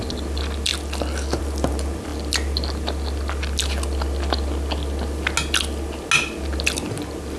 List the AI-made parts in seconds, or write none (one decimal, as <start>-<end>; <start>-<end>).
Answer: none